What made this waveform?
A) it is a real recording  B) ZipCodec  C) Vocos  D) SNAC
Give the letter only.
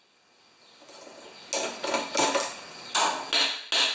A